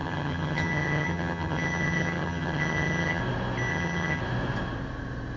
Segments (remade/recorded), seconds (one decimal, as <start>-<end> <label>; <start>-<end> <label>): 0.0-3.2 remade; 3.2-3.7 recorded; 3.7-4.2 remade; 4.2-5.4 recorded